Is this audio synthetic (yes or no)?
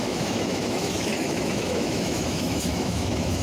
yes